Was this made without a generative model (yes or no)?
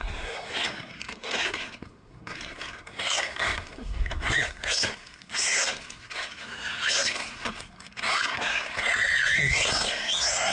no